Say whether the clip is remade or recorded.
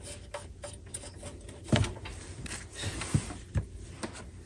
recorded